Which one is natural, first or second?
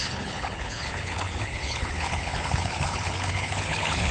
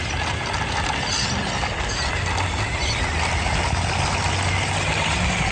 second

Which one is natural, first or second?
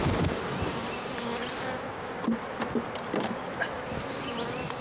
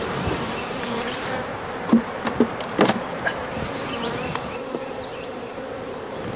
first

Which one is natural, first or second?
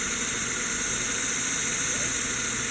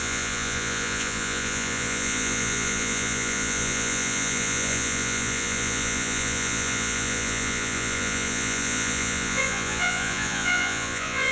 first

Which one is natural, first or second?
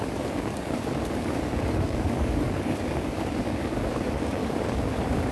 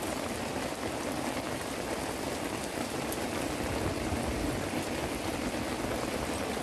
second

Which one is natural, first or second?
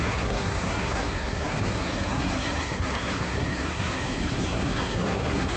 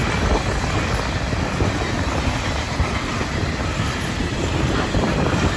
second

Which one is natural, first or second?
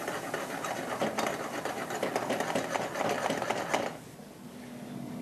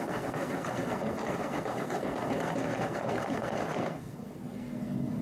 first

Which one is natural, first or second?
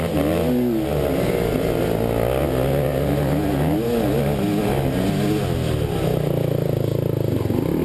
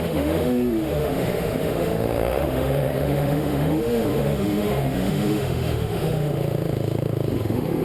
first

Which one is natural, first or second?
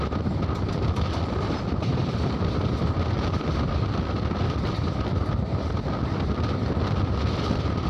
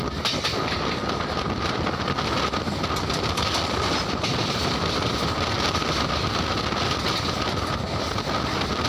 second